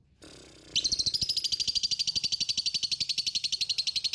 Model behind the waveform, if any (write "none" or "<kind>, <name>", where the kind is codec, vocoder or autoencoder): none